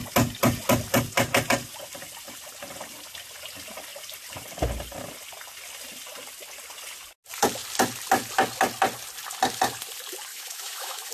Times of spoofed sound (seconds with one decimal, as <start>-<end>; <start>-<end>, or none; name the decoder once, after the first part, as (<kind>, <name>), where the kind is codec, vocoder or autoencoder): 10.3-11.1 (autoencoder, DAC-VAE)

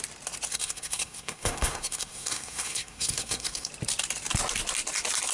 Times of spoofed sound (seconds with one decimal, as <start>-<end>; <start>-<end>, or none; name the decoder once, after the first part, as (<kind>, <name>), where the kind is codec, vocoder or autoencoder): 0.5-3.7 (codec, SNAC)

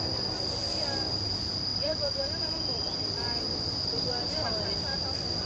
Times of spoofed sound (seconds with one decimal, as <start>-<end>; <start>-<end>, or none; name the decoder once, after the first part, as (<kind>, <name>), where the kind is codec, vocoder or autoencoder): 0.0-0.6 (vocoder, BigVGAN v2); 1.1-5.5

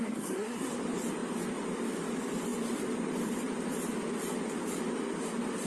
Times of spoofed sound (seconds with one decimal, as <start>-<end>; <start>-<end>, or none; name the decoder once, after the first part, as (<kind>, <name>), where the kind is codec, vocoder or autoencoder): 0.0-0.7 (codec, SNAC)

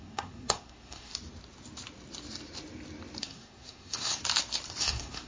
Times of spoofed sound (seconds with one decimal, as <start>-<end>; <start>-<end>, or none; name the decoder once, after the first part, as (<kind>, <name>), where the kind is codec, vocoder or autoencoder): 0.0-1.1 (codec, SNAC); 3.2-4.2; 4.8-5.3